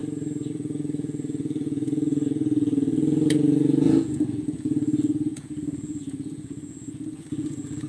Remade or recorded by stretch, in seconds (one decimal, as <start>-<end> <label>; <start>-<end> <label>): 0.0-0.5 recorded; 0.5-7.9 remade